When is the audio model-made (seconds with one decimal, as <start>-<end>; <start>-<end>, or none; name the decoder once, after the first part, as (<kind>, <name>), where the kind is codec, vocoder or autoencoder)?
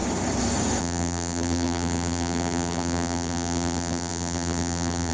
0.8-5.1 (vocoder, BigVGAN v2)